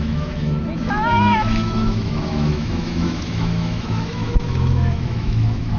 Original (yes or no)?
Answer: no